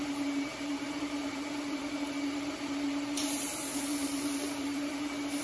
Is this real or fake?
fake